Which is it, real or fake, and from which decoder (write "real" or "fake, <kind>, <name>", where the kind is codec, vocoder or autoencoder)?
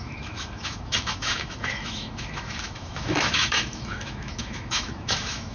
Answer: fake, autoencoder, DAC-VAE